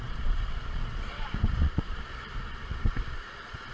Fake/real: fake